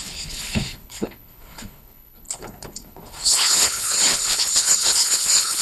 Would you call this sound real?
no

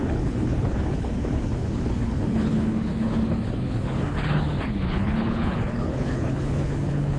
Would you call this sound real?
no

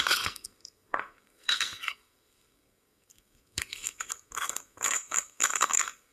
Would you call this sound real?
no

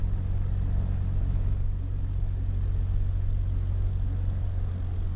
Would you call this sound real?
yes